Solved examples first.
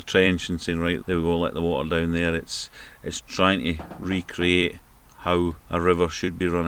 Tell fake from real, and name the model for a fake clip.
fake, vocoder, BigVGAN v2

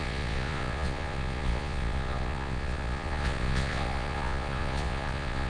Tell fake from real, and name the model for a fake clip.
fake, vocoder, Vocos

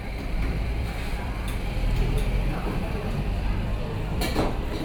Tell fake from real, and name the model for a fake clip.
fake, vocoder, BigVGAN v2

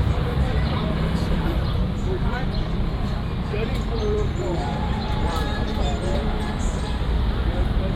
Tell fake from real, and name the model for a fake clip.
fake, vocoder, BigVGAN v2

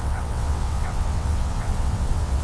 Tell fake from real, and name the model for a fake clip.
fake, vocoder, WaveNeXt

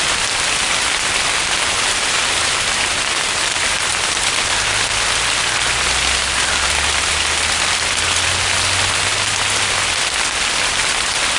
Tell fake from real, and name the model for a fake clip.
real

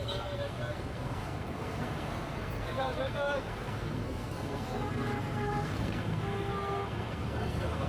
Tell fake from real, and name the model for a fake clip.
fake, codec, SNAC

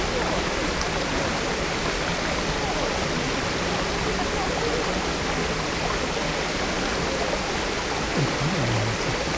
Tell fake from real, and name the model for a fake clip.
real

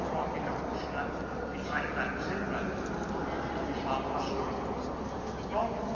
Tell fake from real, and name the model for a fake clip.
real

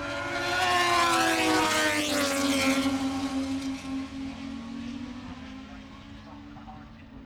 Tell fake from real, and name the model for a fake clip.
real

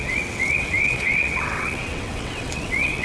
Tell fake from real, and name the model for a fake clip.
fake, vocoder, WaveNeXt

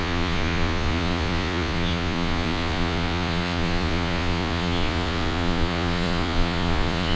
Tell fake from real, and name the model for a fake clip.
fake, vocoder, Vocos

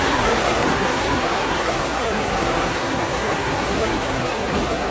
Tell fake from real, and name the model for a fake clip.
fake, codec, SNAC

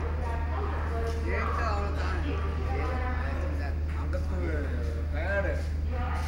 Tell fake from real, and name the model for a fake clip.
real